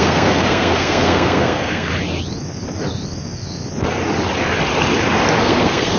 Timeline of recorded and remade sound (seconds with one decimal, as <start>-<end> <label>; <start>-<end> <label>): 0.0-1.9 remade; 1.9-5.4 recorded; 5.4-6.0 remade